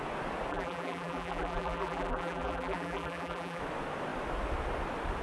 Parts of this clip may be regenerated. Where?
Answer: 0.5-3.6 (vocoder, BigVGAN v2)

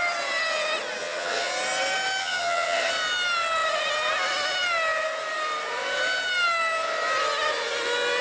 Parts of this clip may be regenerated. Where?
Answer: 1.0-1.5 (vocoder, HiFi-GAN); 2.2-2.9

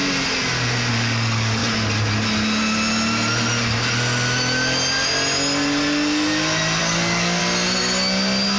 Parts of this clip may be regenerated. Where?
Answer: 0.9-1.6 (codec, DAC); 6.8-7.4

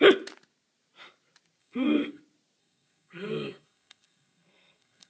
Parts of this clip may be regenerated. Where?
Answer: 1.6-2.2 (codec, SNAC); 2.6-5.1